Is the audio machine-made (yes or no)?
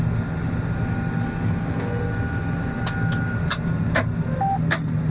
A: no